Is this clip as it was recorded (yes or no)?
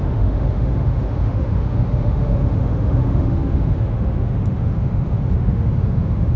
no